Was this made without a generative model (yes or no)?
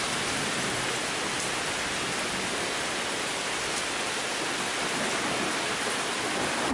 yes